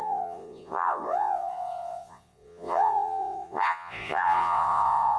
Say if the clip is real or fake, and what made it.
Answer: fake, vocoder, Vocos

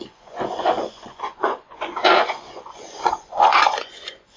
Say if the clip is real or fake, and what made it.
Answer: fake, vocoder, Vocos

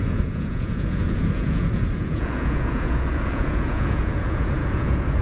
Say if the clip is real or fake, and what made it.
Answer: fake, vocoder, Vocos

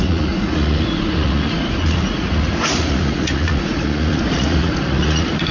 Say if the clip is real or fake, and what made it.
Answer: fake, vocoder, Vocos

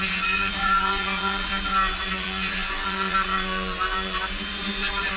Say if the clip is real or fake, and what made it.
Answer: fake, vocoder, Vocos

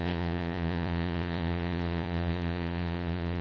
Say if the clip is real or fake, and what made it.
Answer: fake, vocoder, Vocos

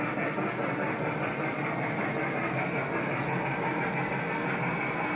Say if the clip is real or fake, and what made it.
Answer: real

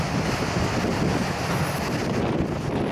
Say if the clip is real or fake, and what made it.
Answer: real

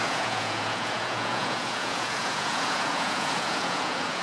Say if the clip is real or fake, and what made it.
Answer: fake, vocoder, Vocos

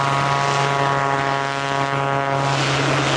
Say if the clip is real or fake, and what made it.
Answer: real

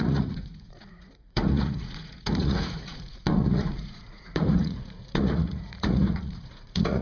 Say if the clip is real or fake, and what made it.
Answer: fake, vocoder, Vocos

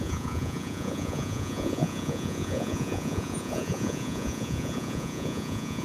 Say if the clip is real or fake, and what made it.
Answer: fake, vocoder, Vocos